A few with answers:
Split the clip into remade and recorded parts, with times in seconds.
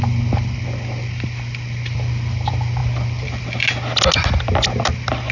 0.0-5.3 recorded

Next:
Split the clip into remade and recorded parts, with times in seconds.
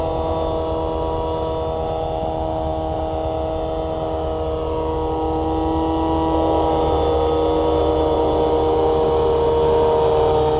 0.0-10.6 recorded